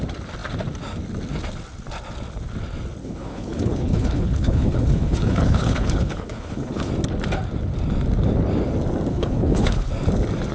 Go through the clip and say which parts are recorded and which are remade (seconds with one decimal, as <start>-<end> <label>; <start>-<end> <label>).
0.0-3.0 recorded; 3.0-6.9 remade; 6.9-9.1 recorded; 9.1-9.9 remade; 9.9-10.5 recorded